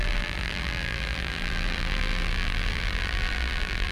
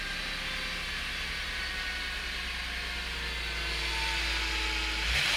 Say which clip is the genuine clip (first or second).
second